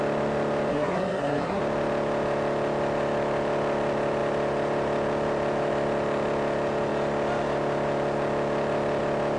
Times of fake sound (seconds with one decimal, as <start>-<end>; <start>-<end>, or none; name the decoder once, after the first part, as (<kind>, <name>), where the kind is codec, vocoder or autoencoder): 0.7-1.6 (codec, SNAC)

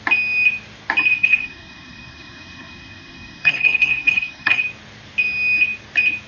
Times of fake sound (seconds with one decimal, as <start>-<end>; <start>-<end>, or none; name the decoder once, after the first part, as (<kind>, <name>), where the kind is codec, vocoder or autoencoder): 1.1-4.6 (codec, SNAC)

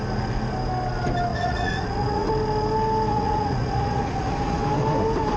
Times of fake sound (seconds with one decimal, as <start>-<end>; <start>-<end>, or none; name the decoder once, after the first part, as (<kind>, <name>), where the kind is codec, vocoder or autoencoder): 1.3-2.3 (vocoder, Vocos); 3.1-4.6